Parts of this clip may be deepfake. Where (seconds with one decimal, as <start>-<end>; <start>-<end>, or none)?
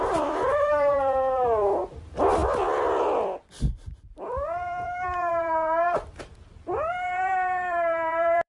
0.0-8.5